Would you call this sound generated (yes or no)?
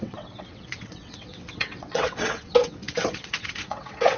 yes